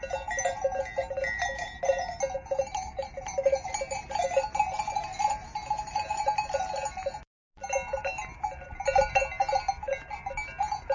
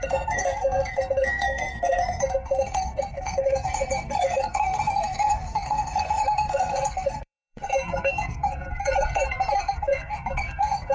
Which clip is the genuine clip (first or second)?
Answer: first